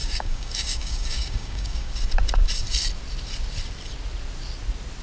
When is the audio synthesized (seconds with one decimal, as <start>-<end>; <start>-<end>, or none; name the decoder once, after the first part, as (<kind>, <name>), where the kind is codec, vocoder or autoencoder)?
0.0-1.9 (codec, DAC)